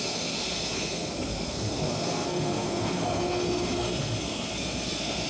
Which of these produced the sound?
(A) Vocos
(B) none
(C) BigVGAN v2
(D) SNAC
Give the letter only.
D